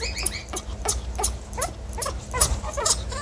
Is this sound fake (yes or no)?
no